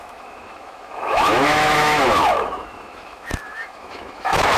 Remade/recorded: remade